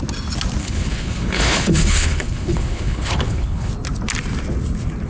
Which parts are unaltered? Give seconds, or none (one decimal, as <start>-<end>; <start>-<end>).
0.0-0.6; 3.7-5.1